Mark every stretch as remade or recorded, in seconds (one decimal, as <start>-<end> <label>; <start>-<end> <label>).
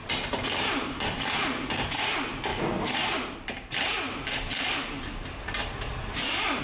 0.0-2.0 remade; 2.0-2.5 recorded; 2.5-6.6 remade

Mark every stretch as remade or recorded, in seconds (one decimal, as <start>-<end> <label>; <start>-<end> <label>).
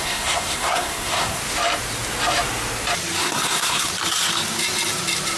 0.0-1.4 remade; 1.4-3.2 recorded; 3.2-3.9 remade; 3.9-5.4 recorded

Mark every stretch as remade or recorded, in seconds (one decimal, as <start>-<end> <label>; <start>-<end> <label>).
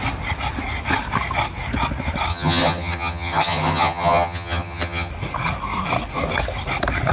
0.0-2.3 recorded; 2.3-5.1 remade; 5.1-7.1 recorded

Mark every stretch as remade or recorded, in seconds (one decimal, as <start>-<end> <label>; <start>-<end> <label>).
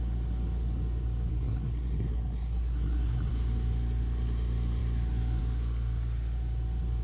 0.0-1.3 recorded; 1.3-3.3 remade; 3.3-7.0 recorded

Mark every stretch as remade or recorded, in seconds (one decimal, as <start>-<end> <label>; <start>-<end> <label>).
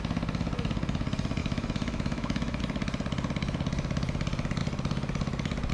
0.0-1.4 recorded; 1.4-2.6 remade; 2.6-5.7 recorded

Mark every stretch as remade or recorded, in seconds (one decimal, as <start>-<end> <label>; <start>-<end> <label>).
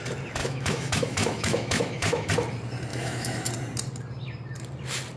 0.0-0.4 recorded; 0.4-2.3 remade; 2.3-2.9 recorded; 2.9-3.5 remade; 3.5-5.2 recorded